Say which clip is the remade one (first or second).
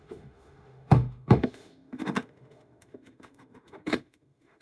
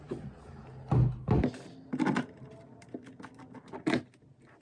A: first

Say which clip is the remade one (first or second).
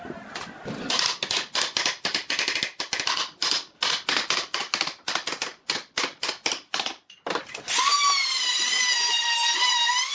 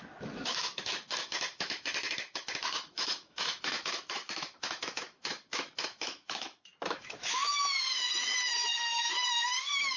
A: second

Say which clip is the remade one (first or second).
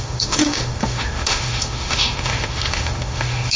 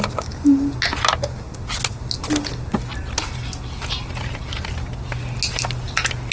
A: first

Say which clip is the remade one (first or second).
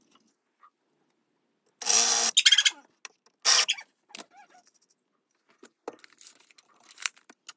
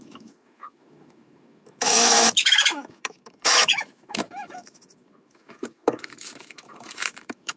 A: second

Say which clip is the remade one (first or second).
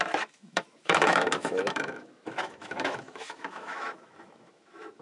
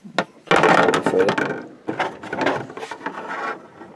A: first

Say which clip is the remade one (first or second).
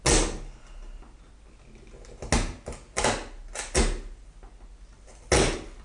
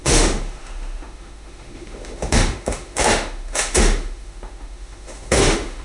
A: second